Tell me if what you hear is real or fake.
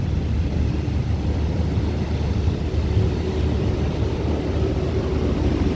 fake